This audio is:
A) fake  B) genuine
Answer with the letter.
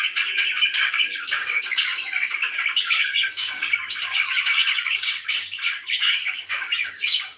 A